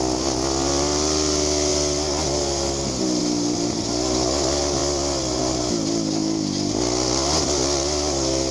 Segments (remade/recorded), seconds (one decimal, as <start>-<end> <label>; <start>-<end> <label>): 0.0-8.5 recorded